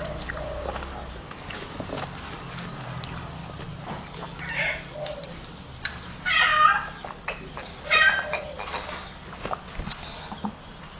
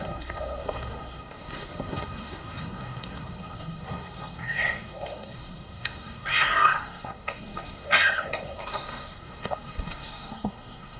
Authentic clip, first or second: first